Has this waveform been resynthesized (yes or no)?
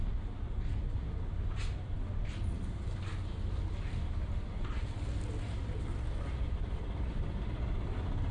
no